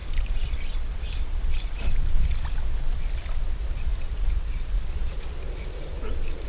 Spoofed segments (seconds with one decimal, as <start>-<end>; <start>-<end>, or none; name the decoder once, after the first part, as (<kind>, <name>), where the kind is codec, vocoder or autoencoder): none